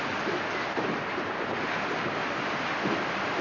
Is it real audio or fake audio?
real